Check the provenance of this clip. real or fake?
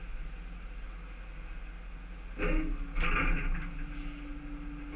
real